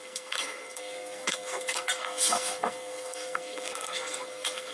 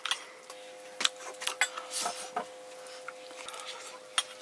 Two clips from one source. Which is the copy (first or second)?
first